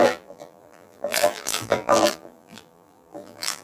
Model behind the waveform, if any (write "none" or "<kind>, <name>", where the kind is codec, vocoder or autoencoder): vocoder, BigVGAN v2